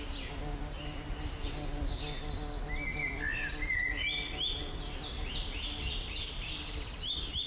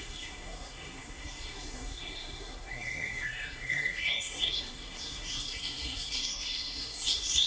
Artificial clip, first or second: second